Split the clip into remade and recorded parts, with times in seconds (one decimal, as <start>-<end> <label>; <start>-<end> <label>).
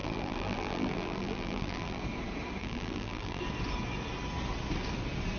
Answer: 0.0-2.0 remade; 2.0-2.6 recorded; 2.6-3.4 remade; 3.4-5.4 recorded